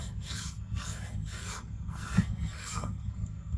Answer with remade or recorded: remade